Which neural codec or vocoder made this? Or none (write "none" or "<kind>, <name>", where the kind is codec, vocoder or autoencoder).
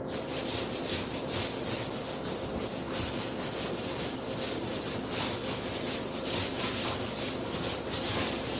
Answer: none